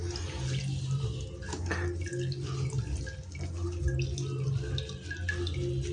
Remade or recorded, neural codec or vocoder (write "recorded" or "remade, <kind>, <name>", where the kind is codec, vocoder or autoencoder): recorded